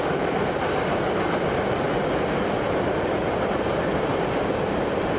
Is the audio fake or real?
real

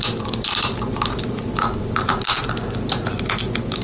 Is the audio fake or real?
real